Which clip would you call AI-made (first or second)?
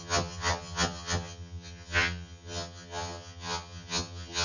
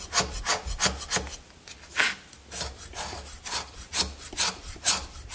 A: first